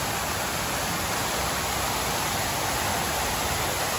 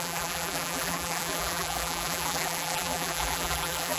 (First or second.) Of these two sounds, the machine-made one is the second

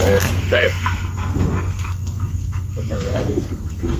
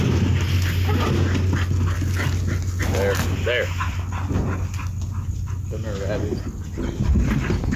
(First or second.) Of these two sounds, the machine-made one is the first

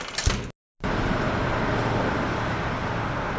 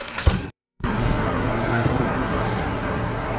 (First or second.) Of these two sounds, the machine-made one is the second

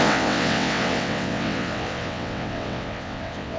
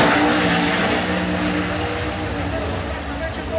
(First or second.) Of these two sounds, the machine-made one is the first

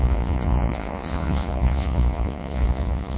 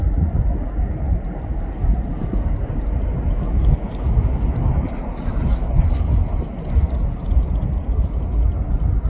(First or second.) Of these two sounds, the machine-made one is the first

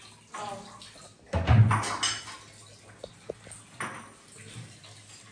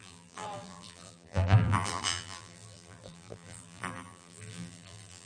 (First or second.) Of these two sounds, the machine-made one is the second